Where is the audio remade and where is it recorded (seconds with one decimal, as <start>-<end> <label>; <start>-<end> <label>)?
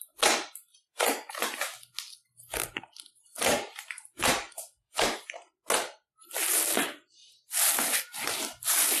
0.0-0.7 recorded; 0.7-1.3 remade; 1.3-2.6 recorded; 2.6-5.5 remade; 5.5-7.2 recorded; 7.2-7.7 remade; 7.7-9.0 recorded